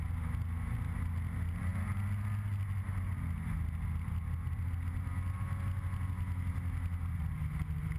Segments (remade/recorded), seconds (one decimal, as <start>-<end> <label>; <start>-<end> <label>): 0.0-8.0 recorded